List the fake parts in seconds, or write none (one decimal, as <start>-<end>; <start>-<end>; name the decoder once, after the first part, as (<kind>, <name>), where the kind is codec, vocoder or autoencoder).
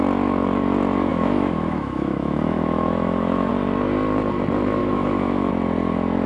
1.1-3.5 (autoencoder, DAC-VAE); 4.8-5.5